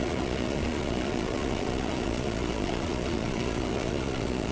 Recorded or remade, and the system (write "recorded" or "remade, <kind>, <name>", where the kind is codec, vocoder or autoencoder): remade, vocoder, Vocos